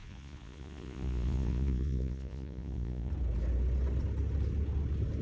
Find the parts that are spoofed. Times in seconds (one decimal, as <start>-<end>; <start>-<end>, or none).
0.0-3.1